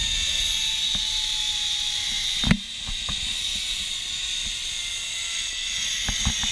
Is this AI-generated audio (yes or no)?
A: no